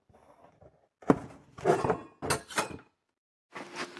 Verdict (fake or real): real